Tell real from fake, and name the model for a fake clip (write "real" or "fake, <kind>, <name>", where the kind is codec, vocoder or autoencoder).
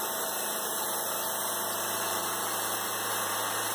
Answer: fake, vocoder, BigVGAN v2